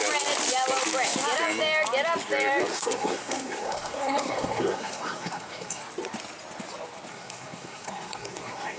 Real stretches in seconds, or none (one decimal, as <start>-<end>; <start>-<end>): 0.0-2.7; 5.8-7.1